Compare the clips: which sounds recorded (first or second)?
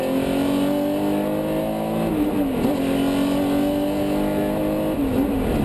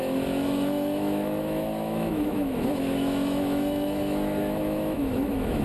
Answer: first